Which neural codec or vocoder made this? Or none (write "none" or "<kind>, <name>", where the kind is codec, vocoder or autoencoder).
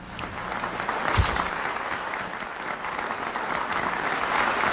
none